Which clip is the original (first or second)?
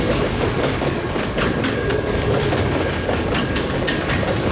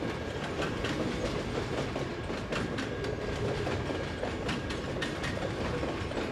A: second